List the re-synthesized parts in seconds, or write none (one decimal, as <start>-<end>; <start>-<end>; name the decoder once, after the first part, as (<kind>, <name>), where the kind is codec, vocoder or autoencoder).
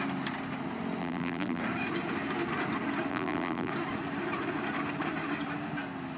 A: 1.0-1.6 (vocoder, BigVGAN v2); 3.1-3.7